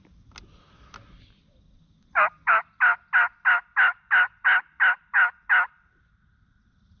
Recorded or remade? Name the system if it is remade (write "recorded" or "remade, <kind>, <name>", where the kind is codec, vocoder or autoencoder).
recorded